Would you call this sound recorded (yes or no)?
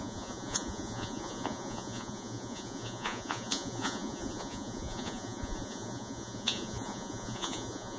no